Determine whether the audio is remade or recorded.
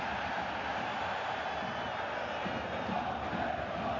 recorded